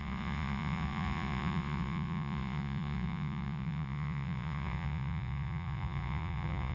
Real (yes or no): no